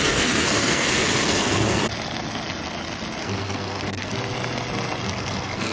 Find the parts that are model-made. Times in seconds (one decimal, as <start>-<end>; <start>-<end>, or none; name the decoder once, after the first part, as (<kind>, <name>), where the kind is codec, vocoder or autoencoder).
0.0-1.8 (codec, SNAC); 3.2-4.1; 5.1-5.7